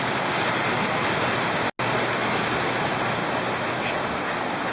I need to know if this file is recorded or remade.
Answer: recorded